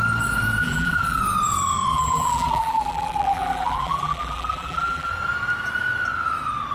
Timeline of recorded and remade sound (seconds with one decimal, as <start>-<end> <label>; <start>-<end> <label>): 0.0-0.6 recorded; 0.6-1.2 remade; 1.2-1.9 recorded; 1.9-5.1 remade; 5.1-6.7 recorded